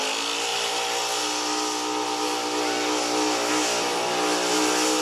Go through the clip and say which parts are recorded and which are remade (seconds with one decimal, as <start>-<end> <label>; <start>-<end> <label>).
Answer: 0.0-5.0 recorded